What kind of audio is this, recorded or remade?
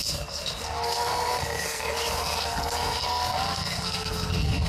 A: remade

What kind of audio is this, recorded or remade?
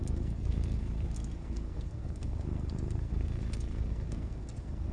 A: remade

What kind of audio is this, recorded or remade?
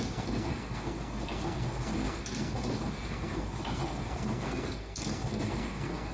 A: remade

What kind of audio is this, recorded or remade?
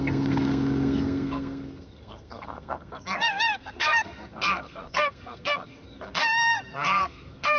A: remade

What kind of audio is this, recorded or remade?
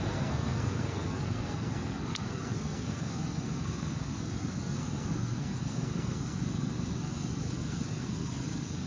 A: remade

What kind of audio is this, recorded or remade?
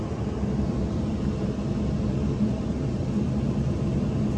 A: recorded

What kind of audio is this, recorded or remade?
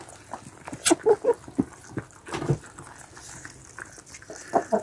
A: recorded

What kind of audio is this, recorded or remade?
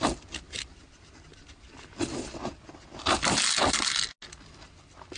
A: recorded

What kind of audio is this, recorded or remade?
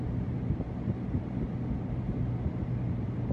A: recorded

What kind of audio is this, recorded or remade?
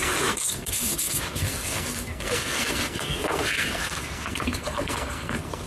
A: remade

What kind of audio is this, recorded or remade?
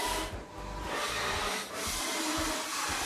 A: recorded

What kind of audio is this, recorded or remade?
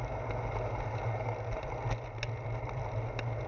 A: recorded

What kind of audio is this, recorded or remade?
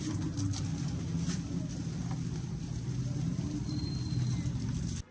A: recorded